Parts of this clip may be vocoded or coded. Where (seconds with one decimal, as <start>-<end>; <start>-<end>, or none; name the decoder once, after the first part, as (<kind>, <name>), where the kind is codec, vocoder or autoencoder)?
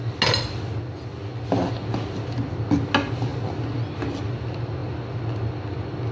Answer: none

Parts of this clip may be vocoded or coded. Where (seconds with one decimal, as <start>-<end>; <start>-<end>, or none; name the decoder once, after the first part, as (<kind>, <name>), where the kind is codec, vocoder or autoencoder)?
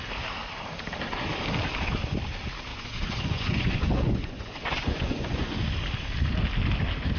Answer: 2.7-5.6 (vocoder, Vocos)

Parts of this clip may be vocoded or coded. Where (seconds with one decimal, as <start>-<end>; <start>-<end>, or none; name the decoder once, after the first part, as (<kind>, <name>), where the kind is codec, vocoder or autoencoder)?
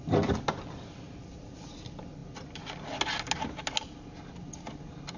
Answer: none